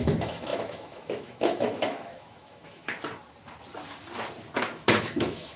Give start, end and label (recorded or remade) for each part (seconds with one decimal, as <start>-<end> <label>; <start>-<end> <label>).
0.0-2.8 remade; 2.8-5.0 recorded; 5.0-5.6 remade